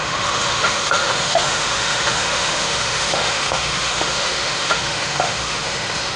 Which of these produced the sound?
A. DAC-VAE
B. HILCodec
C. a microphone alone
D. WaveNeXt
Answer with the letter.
A